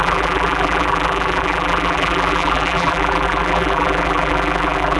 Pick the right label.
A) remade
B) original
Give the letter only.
A